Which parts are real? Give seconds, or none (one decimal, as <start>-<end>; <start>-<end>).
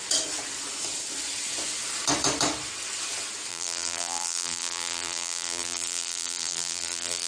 0.0-3.5